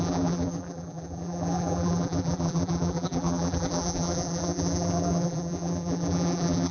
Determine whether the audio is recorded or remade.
remade